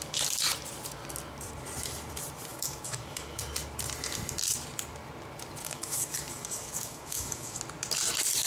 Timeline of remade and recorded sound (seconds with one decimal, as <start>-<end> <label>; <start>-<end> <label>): 0.0-2.5 recorded; 2.5-3.4 remade; 3.4-5.6 recorded; 5.6-7.6 remade; 7.6-8.5 recorded